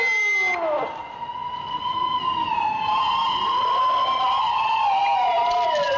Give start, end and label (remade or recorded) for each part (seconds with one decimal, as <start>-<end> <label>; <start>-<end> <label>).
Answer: 0.0-6.0 recorded